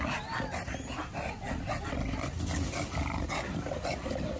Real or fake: real